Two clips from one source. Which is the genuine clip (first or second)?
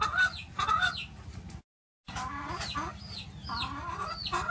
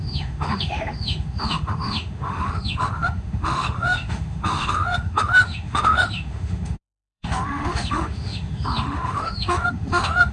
first